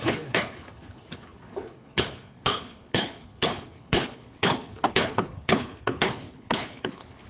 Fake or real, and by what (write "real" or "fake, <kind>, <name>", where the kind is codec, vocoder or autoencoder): fake, codec, HILCodec